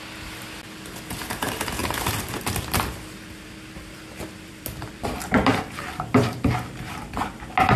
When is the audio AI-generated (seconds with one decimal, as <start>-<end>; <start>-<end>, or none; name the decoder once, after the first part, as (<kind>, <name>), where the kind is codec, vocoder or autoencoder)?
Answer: 1.8-6.5 (vocoder, BigVGAN v2)